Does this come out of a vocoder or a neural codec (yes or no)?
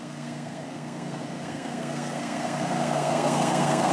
yes